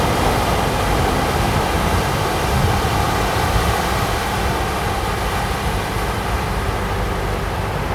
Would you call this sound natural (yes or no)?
yes